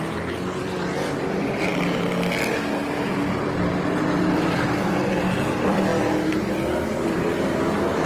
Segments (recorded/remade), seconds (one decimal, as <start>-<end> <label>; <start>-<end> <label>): 0.0-1.7 remade; 1.7-5.5 recorded; 5.5-5.9 remade; 5.9-6.5 recorded; 6.5-8.1 remade